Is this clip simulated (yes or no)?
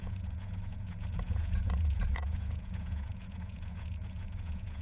yes